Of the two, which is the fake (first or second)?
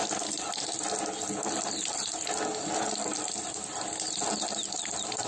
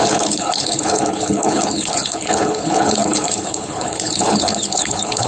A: second